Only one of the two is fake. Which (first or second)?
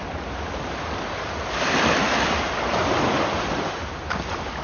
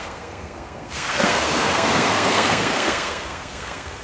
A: second